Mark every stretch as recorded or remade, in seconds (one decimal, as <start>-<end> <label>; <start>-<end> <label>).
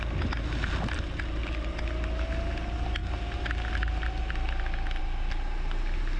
0.0-6.2 recorded